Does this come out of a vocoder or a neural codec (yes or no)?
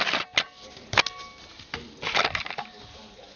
no